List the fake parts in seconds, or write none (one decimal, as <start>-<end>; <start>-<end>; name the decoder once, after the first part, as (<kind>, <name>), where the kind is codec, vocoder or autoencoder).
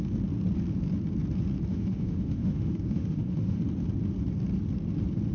1.7-3.6 (autoencoder, DAC-VAE)